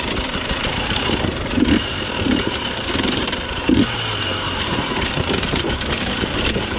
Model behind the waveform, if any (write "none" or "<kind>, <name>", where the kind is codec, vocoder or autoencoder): vocoder, BigVGAN v2